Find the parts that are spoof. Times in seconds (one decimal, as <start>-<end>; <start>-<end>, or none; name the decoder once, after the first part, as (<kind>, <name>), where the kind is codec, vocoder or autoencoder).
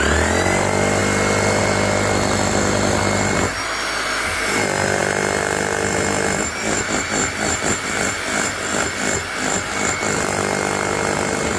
none